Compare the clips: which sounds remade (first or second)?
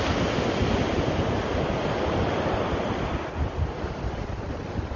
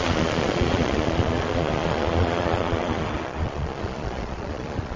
second